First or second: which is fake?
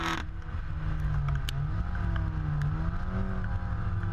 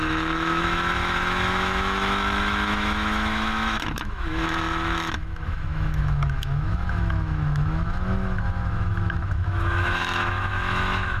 second